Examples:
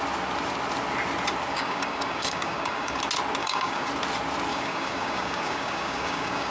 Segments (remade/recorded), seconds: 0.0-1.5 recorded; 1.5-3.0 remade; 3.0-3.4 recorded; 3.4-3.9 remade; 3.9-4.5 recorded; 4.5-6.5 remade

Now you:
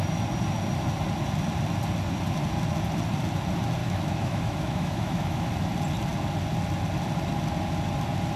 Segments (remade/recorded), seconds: 0.0-3.8 recorded; 3.8-5.5 remade; 5.5-8.4 recorded

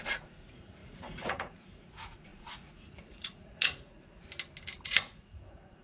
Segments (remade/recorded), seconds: 0.0-4.2 remade; 4.2-4.8 recorded; 4.8-5.8 remade

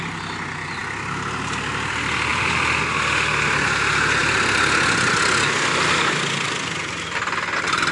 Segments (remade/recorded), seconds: 0.0-2.3 recorded; 2.3-2.8 remade; 2.8-4.2 recorded; 4.2-5.2 remade; 5.2-7.9 recorded